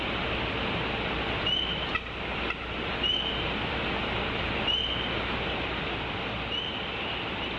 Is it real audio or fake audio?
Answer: fake